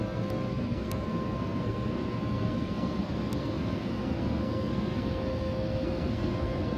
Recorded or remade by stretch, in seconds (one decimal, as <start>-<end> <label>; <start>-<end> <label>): 0.0-6.8 remade